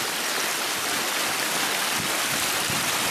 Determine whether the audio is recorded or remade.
recorded